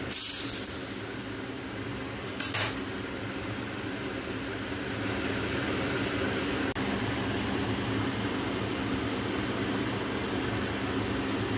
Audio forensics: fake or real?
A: real